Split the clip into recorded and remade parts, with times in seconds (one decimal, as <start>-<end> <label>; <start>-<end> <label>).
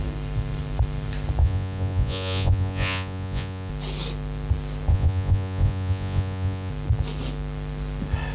0.0-1.4 recorded; 1.4-3.7 remade; 3.7-4.9 recorded; 4.9-6.7 remade; 6.7-8.3 recorded